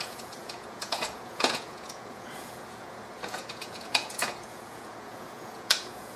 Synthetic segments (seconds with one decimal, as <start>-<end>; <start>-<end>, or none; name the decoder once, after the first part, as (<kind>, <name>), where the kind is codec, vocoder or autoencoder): 0.0-6.2 (vocoder, Vocos)